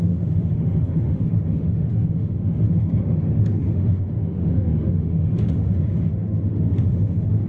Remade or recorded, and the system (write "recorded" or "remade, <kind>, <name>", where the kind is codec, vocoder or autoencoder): remade, autoencoder, DAC-VAE